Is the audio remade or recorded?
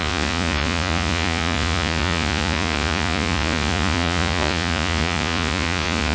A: remade